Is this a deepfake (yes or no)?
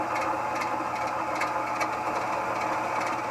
no